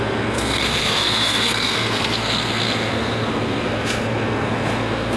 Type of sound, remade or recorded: remade